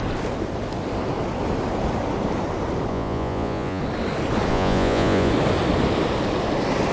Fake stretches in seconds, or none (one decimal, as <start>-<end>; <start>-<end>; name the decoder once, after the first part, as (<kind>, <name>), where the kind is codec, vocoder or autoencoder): 2.9-3.8 (vocoder, Vocos); 4.5-5.3